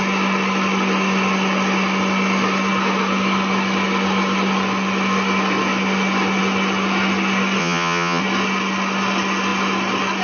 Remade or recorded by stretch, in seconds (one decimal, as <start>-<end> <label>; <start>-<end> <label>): 0.0-7.6 recorded; 7.6-8.2 remade; 8.2-10.2 recorded